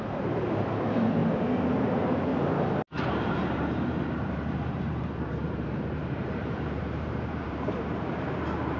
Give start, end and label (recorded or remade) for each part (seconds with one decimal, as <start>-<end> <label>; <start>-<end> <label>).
0.0-1.2 remade; 1.2-1.8 recorded; 1.8-2.3 remade; 2.3-3.1 recorded; 3.1-8.8 remade